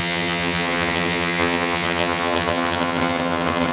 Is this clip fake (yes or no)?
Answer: yes